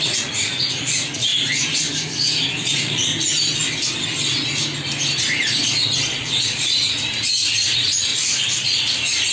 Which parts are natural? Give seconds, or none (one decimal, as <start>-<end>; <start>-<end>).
1.3-2.6; 3.1-6.2; 8.1-9.3